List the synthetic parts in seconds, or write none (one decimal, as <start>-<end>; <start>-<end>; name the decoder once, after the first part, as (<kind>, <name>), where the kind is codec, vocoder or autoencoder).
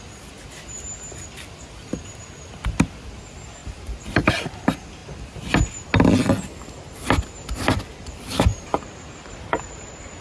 3.6-4.3 (vocoder, BigVGAN v2); 8.5-10.2